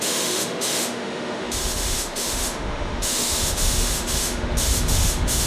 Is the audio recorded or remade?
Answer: remade